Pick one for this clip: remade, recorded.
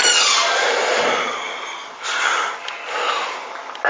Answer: recorded